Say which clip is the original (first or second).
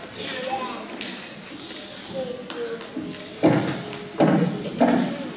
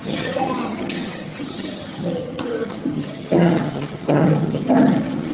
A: first